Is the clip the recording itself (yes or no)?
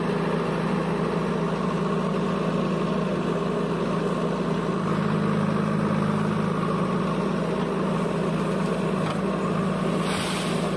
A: yes